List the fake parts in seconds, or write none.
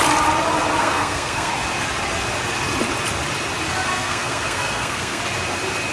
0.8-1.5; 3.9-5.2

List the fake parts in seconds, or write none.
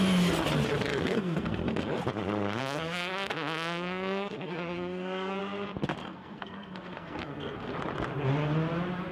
0.9-2.0; 2.6-5.4; 6.0-7.7